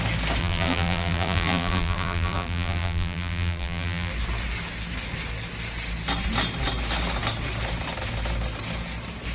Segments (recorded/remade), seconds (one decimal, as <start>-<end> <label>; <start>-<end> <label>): 0.0-0.4 recorded; 0.4-4.1 remade; 4.1-9.3 recorded